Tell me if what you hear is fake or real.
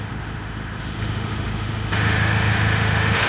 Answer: fake